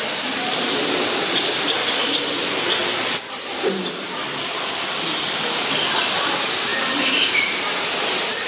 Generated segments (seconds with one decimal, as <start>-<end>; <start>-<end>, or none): 0.0-2.8; 3.9-6.7